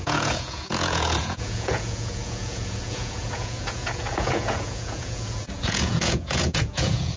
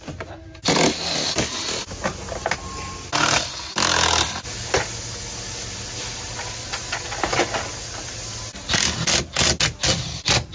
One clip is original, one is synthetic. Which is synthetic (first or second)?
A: first